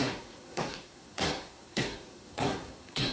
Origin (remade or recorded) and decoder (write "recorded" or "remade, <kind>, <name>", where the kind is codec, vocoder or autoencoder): remade, codec, SNAC